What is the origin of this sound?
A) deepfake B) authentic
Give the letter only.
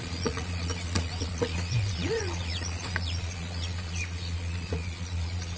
A